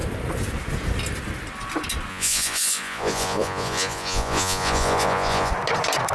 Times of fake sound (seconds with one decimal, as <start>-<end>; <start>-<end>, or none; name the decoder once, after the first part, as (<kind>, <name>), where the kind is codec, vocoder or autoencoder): 2.1-5.5 (vocoder, Vocos)